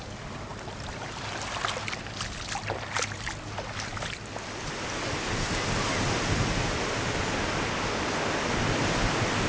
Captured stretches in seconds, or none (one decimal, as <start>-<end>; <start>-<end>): 0.0-9.5